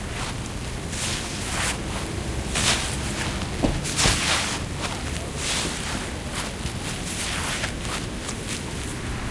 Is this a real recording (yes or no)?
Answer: yes